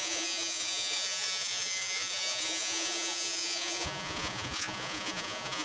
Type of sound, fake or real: fake